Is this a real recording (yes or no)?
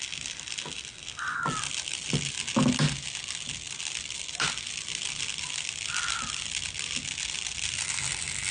yes